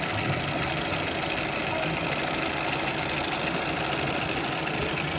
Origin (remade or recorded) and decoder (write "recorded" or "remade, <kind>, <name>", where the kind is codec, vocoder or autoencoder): recorded